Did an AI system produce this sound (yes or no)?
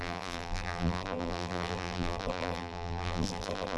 yes